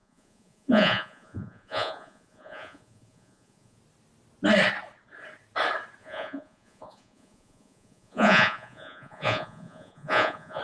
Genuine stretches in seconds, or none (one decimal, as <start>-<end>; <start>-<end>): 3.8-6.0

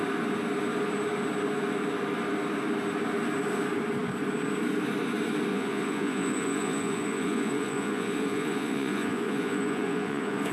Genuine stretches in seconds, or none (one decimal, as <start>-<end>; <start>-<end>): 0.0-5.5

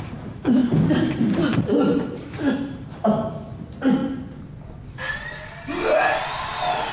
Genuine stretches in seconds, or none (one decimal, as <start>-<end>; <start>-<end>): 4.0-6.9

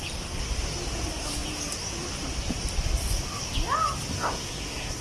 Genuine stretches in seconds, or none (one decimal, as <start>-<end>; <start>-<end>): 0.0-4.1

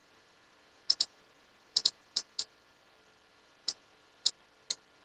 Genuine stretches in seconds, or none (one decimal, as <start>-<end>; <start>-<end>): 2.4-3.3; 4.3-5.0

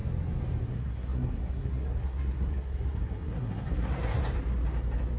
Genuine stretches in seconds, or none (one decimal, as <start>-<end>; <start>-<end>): 0.0-0.7; 4.2-5.2

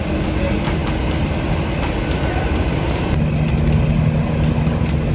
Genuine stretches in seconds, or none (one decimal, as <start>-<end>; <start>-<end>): 0.0-5.1